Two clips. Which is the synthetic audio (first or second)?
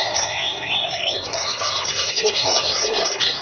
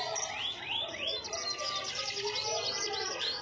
first